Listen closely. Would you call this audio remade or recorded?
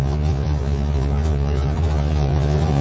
remade